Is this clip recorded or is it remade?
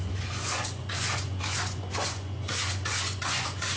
remade